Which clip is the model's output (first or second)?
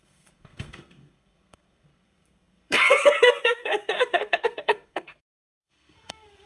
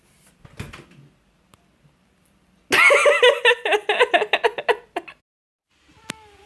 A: first